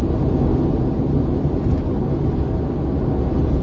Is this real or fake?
real